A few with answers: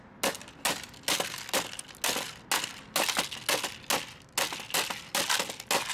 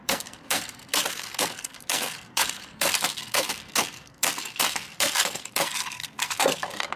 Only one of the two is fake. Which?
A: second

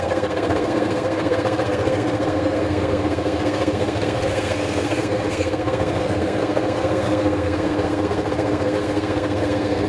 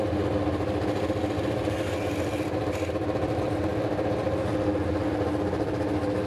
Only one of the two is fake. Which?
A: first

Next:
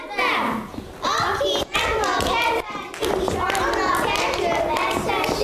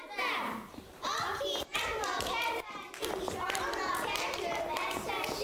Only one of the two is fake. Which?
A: second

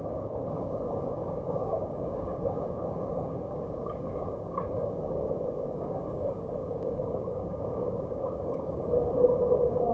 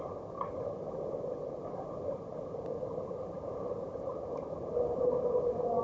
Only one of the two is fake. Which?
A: first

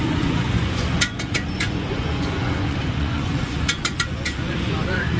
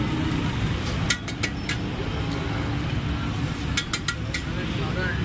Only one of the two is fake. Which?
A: first